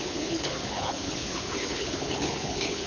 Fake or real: fake